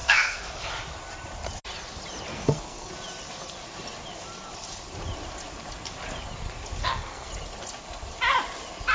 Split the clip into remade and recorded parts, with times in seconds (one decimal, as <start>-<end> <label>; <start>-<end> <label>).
0.0-0.7 remade; 0.7-2.3 recorded; 2.3-2.9 remade; 2.9-6.8 recorded; 6.8-7.3 remade; 7.3-8.9 recorded